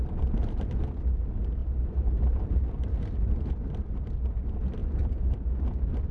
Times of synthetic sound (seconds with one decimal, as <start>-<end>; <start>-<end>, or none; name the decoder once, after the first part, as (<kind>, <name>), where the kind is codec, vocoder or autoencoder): 1.6-3.5 (vocoder, BigVGAN v2); 4.8-5.5